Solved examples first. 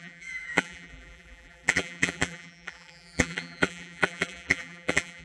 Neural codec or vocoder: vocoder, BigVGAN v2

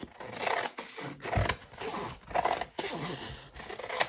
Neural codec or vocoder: none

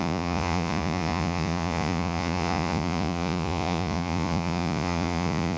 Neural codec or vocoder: vocoder, Vocos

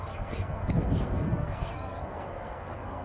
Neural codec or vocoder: codec, SNAC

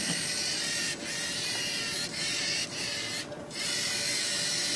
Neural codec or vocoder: none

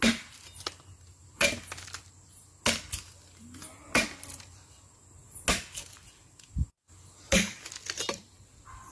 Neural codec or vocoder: none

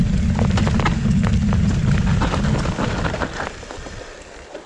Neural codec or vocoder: none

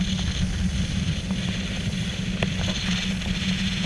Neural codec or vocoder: none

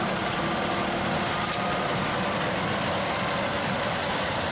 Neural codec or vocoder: none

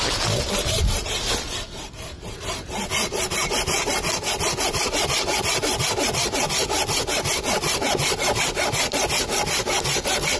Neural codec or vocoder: none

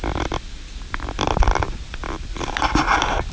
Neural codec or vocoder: none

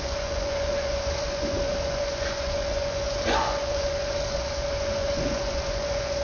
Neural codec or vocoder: vocoder, Vocos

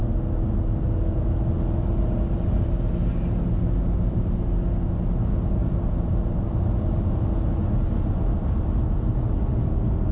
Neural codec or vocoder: none